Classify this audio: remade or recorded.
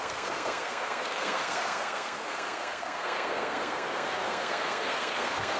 remade